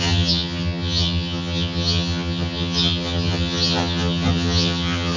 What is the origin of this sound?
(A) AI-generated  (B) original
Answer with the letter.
A